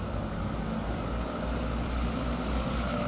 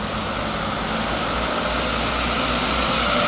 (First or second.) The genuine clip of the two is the second